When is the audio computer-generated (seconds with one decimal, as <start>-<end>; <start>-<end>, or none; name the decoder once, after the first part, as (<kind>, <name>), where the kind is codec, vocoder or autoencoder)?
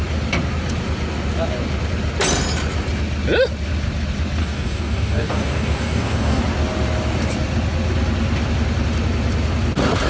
4.4-6.4 (codec, DAC)